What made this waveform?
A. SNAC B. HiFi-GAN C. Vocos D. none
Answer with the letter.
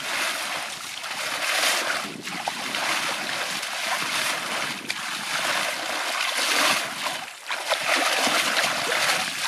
D